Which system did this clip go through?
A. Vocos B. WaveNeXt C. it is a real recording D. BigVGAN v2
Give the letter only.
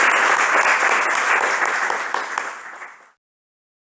C